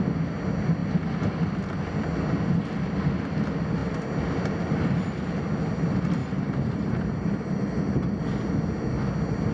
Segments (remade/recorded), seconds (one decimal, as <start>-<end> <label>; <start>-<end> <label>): 0.0-6.2 recorded; 6.2-8.2 remade; 8.2-9.5 recorded